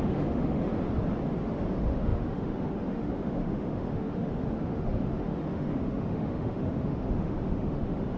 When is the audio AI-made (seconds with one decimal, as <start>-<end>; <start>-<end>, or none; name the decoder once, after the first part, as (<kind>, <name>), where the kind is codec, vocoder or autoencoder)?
0.0-0.7 (autoencoder, DAC-VAE); 1.5-8.2